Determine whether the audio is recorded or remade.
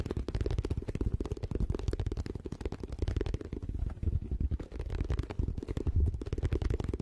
recorded